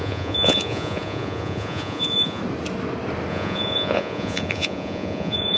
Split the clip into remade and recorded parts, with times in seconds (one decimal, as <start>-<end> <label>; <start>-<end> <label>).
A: 0.0-2.4 remade; 2.4-3.3 recorded; 3.3-5.6 remade